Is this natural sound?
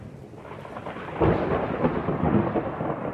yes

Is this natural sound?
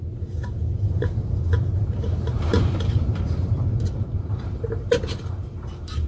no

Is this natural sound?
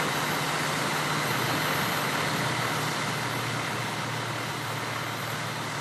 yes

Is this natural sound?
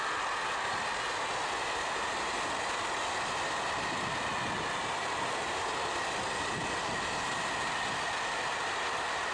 yes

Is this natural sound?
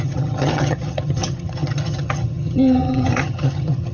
no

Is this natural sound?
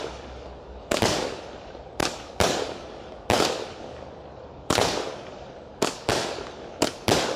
no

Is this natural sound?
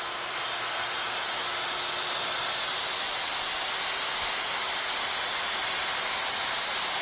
yes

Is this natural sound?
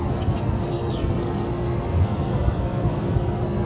no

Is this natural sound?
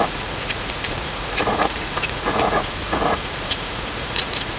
no